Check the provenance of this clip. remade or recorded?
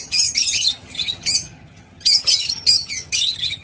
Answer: remade